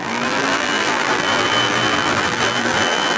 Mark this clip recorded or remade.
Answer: remade